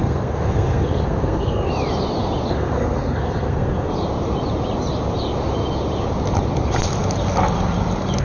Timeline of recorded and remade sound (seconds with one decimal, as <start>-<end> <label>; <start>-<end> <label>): 0.0-1.7 remade; 1.7-2.5 recorded; 2.5-3.9 remade; 3.9-8.2 recorded